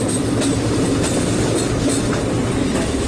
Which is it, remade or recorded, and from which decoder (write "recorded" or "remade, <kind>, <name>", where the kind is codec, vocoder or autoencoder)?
recorded